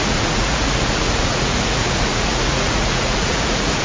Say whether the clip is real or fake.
fake